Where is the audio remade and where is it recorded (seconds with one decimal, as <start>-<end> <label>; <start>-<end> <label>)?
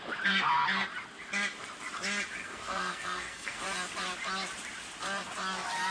0.0-2.4 recorded; 2.4-3.6 remade; 3.6-5.9 recorded